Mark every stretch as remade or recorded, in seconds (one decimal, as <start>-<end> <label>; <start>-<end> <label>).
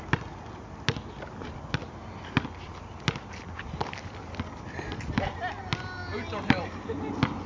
0.0-7.5 recorded